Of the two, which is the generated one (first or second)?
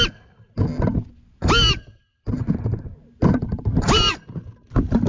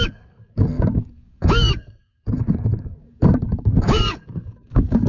second